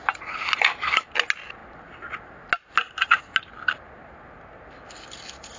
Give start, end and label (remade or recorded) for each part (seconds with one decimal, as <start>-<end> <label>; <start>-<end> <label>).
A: 0.0-5.6 recorded